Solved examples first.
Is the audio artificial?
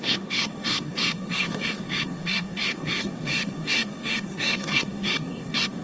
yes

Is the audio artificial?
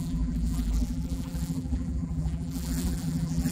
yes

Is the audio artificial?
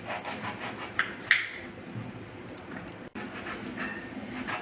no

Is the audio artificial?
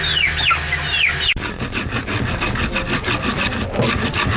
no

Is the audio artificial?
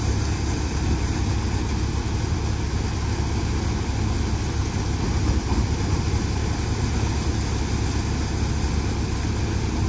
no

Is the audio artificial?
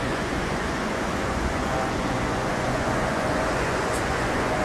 yes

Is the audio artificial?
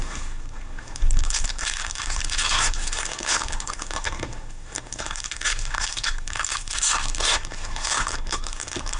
yes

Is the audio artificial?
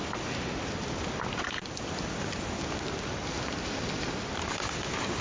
no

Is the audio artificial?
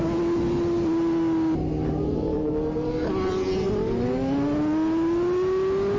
no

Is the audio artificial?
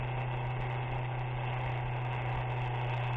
no